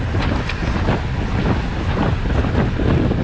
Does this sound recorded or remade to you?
recorded